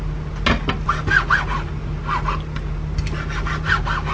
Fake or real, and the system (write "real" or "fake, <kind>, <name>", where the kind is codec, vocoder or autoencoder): real